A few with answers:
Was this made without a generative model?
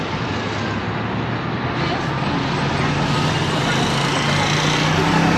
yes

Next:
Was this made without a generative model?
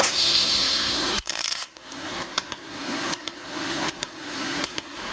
no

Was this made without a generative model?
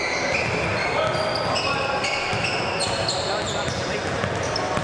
yes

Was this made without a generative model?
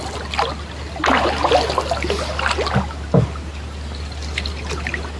yes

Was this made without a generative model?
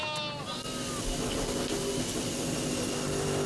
yes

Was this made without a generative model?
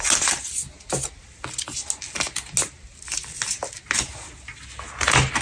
yes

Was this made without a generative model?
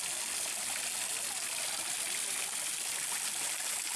yes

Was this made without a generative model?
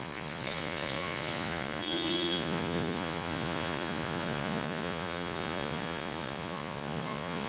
no